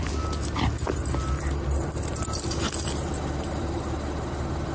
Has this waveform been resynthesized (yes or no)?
no